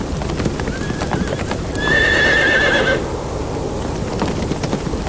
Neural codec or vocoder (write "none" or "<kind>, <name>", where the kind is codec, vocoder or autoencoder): none